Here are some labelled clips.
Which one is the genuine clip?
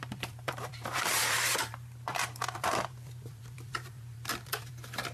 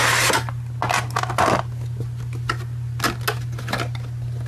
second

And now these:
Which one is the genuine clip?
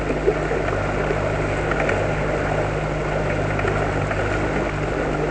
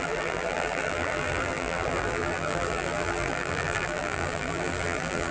first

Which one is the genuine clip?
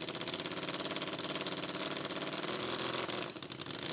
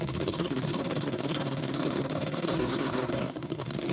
first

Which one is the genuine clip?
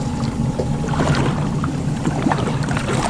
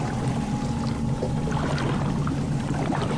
second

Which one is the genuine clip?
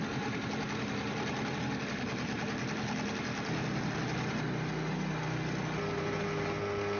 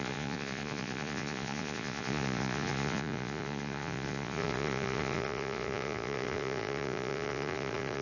first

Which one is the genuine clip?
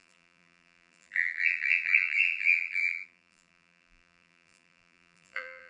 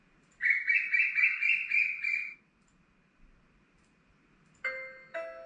second